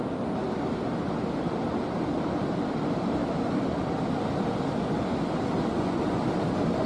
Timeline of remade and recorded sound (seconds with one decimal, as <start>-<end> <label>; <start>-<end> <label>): 0.0-5.7 recorded; 5.7-6.2 remade; 6.2-6.9 recorded